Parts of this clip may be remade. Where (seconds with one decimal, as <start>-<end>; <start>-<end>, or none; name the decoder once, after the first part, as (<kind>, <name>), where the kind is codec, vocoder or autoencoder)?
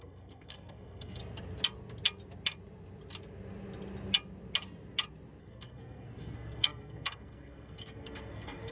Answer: 0.0-1.2 (codec, SNAC); 5.4-8.7